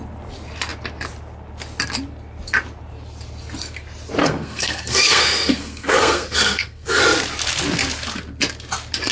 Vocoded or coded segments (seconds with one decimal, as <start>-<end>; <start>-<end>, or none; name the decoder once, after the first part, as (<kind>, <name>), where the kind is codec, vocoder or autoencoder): 4.2-7.0 (codec, SNAC)